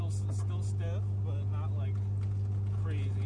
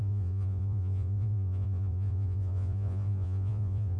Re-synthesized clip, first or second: second